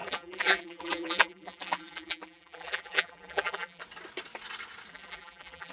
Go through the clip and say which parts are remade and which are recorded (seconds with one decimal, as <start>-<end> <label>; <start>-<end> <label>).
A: 0.0-3.8 remade; 3.8-4.9 recorded; 4.9-5.7 remade